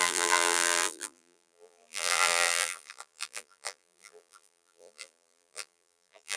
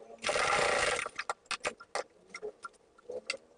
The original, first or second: second